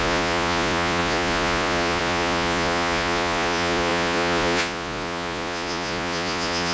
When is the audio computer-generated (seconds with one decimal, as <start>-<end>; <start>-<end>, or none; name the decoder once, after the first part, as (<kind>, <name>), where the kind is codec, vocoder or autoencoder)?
0.0-6.7 (vocoder, Vocos)